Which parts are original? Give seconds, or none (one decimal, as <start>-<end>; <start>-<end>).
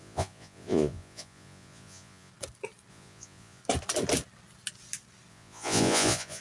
2.3-2.9; 3.6-5.3